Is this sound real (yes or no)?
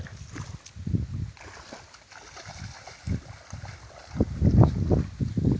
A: no